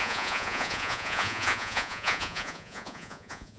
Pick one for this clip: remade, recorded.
remade